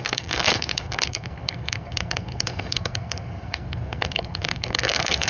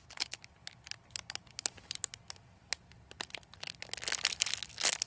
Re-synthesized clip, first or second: first